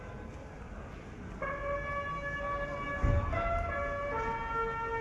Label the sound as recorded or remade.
recorded